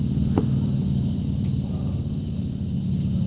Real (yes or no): yes